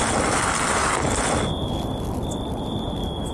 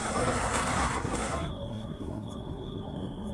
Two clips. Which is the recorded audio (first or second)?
first